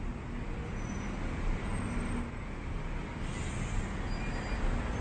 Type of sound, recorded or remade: recorded